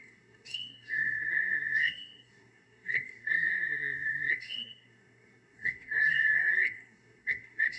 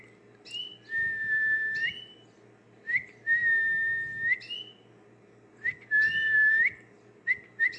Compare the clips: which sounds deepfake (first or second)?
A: first